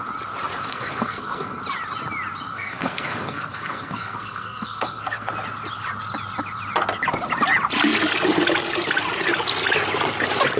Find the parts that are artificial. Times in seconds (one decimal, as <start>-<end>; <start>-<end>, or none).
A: 0.7-1.6; 2.5-5.3